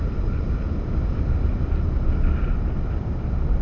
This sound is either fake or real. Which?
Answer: real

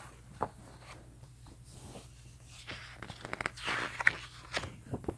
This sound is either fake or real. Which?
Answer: real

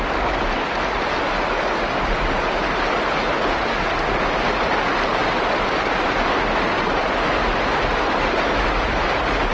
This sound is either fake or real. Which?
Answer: real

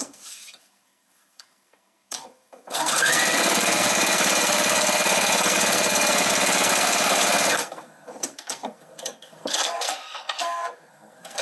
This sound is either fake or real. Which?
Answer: fake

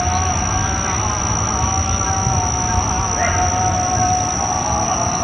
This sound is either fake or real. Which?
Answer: real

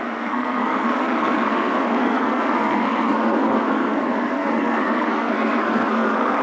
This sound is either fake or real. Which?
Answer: fake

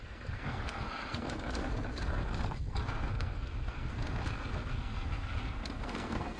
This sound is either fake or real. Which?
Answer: fake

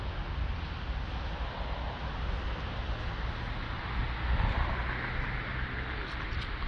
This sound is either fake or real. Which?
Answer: real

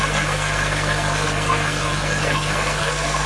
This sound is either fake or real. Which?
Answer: fake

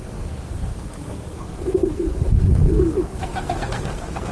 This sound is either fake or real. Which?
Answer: fake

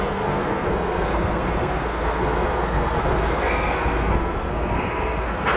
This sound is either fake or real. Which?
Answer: fake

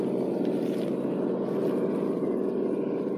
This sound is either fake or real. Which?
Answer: real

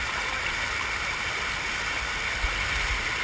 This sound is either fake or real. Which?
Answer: real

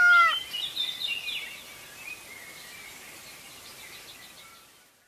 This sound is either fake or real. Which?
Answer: real